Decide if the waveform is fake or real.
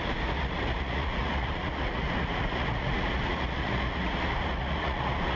fake